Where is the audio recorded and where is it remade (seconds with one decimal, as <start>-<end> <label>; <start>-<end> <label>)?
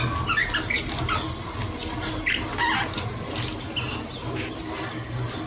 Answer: 0.0-5.5 recorded